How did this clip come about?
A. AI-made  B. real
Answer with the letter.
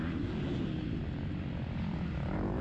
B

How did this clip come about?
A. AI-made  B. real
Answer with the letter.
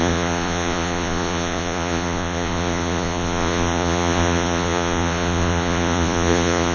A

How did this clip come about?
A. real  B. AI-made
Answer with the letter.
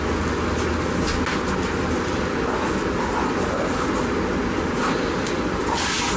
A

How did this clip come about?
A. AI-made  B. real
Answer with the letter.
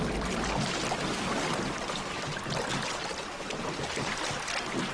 B